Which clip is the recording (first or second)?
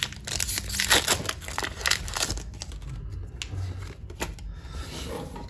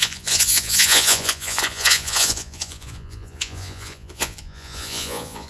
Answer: first